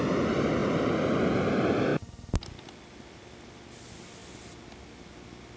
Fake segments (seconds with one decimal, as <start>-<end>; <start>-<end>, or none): 1.9-2.6